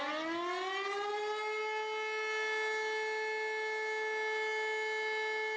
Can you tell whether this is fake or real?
real